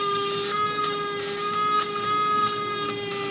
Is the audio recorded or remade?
recorded